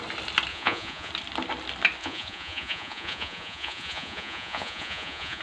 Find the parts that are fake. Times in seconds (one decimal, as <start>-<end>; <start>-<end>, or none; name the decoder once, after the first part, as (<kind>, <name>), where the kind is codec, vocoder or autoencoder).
0.5-1.1 (vocoder, Vocos); 2.0-5.4

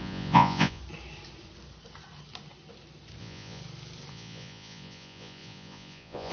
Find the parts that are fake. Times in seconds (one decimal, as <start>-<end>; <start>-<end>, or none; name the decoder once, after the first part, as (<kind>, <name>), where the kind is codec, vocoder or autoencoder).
0.0-0.8 (vocoder, Vocos); 3.2-3.6; 4.1-6.3

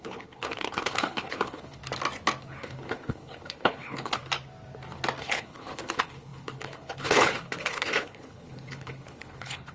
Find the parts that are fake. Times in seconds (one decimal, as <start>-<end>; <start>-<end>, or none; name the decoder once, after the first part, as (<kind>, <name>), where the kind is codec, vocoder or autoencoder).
0.0-1.8 (codec, HILCodec); 2.4-4.2; 5.2-9.7

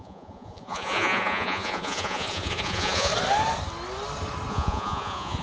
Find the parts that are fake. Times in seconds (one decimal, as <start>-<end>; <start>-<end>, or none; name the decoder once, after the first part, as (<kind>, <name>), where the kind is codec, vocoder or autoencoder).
0.0-3.1 (vocoder, Vocos); 4.5-5.4

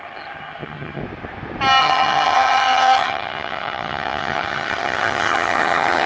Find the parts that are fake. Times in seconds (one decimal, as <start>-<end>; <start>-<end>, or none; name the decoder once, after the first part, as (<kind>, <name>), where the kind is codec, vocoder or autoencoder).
0.0-1.0 (vocoder, HiFi-GAN); 1.8-6.1

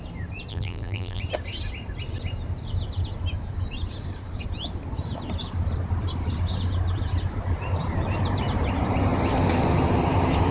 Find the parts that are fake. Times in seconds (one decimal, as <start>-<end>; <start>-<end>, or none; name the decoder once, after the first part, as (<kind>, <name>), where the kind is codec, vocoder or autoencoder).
0.5-1.2 (vocoder, BigVGAN v2)

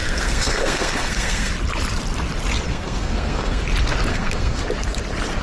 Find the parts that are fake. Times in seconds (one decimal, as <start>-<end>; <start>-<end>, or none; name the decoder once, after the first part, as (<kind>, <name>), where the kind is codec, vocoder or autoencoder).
0.0-1.5 (codec, SNAC); 2.7-3.6; 4.1-4.6